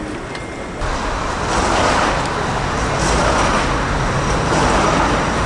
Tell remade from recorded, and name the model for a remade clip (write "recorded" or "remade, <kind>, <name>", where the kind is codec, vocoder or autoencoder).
recorded